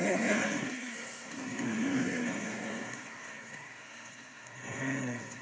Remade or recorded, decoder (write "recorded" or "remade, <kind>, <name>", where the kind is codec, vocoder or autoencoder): remade, codec, SNAC